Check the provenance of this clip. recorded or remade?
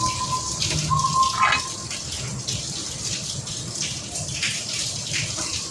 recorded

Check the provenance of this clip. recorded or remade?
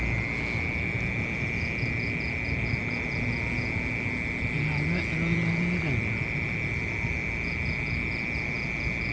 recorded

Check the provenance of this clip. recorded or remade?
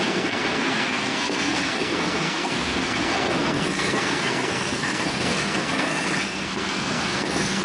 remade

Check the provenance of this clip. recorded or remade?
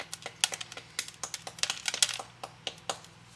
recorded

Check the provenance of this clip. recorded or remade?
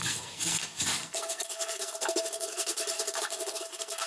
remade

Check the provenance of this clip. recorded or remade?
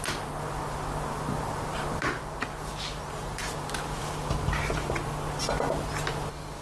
recorded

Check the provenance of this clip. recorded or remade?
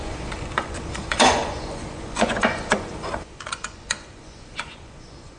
remade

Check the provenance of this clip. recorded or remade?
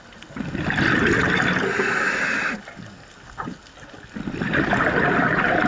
recorded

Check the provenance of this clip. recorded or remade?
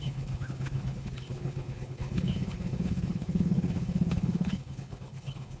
remade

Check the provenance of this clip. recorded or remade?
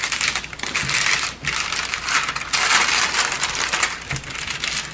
recorded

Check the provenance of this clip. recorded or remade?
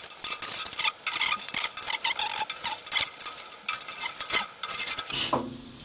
recorded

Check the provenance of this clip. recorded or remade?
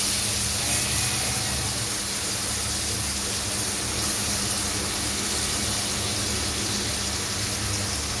recorded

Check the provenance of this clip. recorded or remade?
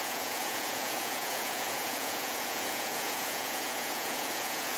remade